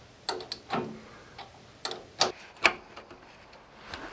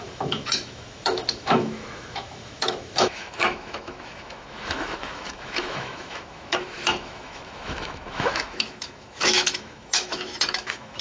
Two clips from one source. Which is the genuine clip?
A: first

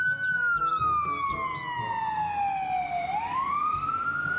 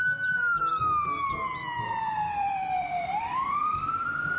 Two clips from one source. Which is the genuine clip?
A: first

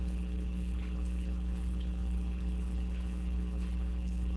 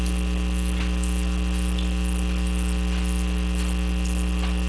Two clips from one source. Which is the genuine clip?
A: second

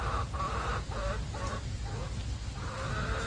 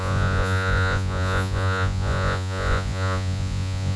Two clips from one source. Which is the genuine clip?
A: first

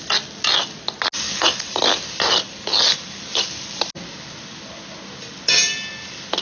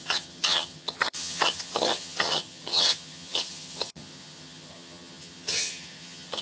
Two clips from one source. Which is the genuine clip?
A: first